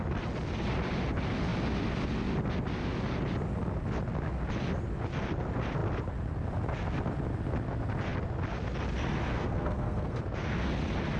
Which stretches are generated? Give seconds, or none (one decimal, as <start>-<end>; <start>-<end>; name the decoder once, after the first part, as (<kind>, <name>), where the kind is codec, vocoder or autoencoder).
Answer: 9.3-10.2 (codec, SNAC)